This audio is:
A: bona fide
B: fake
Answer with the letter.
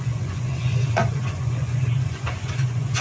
B